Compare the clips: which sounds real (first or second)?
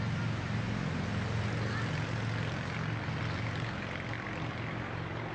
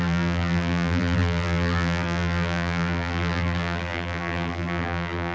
first